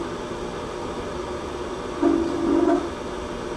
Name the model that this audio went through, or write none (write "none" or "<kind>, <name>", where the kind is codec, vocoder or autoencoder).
none